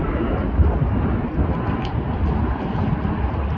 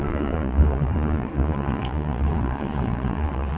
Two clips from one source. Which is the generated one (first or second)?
second